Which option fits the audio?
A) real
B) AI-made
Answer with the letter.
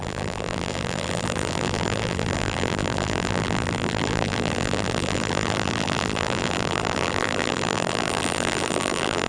B